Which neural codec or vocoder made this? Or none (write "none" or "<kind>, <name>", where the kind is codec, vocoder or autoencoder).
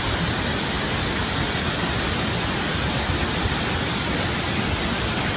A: none